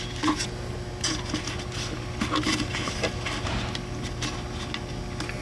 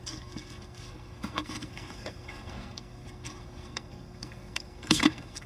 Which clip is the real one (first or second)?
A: first